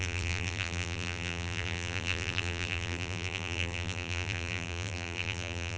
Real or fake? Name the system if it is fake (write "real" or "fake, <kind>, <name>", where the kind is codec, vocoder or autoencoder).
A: fake, vocoder, BigVGAN v2